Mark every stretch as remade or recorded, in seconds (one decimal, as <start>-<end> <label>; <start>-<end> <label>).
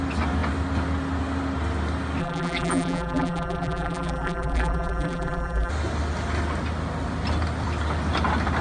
0.0-2.2 recorded; 2.2-5.7 remade; 5.7-8.6 recorded